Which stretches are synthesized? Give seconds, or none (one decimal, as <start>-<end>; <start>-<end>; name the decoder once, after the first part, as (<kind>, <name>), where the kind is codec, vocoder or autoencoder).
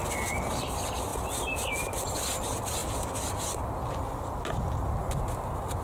none